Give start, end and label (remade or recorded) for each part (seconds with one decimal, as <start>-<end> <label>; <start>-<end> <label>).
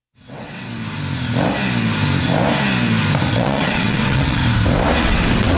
0.0-0.7 remade; 0.7-3.3 recorded; 3.3-4.4 remade; 4.4-5.0 recorded; 5.0-5.6 remade